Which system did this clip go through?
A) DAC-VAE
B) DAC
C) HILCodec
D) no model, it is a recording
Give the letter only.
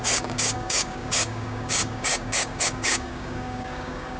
B